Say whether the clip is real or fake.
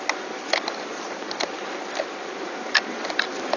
real